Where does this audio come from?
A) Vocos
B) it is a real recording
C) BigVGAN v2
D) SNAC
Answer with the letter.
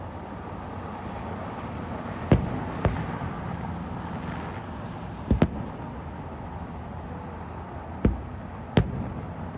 B